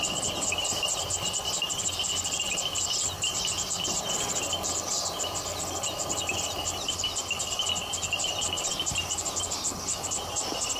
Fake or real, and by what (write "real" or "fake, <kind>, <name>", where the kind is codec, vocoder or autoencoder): real